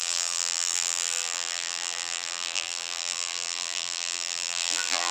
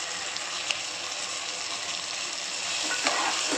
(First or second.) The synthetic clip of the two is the first